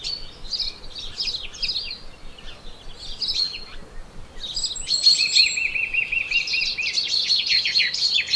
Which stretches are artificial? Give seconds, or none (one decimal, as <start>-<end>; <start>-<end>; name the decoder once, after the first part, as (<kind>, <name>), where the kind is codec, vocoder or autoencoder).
none